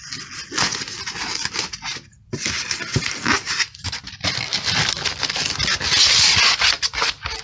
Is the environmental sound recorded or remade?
recorded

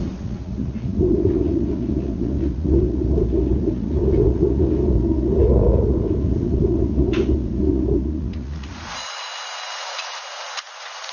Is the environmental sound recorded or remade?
remade